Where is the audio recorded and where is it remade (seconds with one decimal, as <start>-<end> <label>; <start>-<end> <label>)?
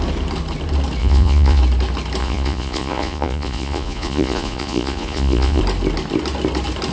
0.0-1.0 recorded; 1.0-1.6 remade; 1.6-2.2 recorded; 2.2-5.6 remade; 5.6-6.9 recorded